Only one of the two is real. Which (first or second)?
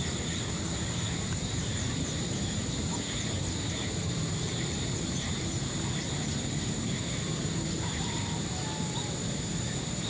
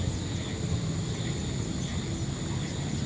second